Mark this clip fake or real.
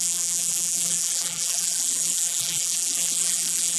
fake